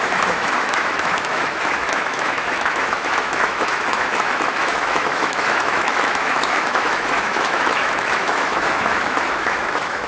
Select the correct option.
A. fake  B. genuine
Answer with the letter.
A